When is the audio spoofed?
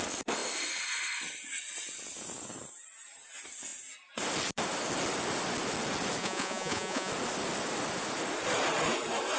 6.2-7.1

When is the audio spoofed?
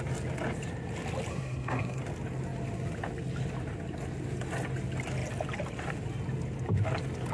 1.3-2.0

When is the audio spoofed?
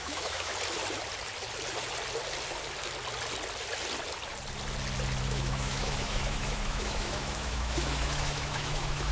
0.0-0.5; 5.2-9.1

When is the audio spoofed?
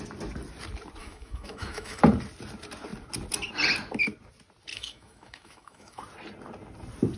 1.0-2.0; 4.7-6.0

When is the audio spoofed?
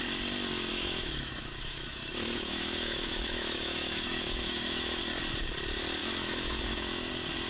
0.7-5.0; 6.0-7.1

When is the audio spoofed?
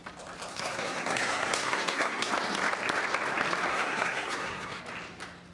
0.5-2.3; 3.7-4.8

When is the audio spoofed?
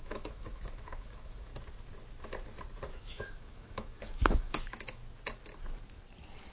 0.0-1.5; 2.9-5.0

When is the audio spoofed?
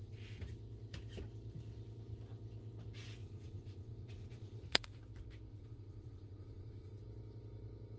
0.0-0.5; 3.2-5.0; 5.5-7.0